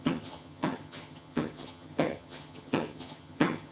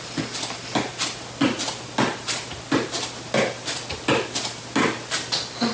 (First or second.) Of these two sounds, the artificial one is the first